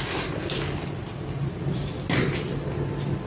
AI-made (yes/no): no